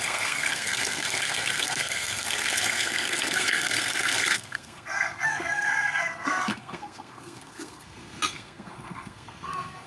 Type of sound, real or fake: fake